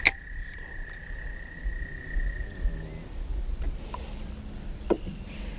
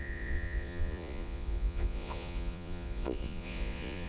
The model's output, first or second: second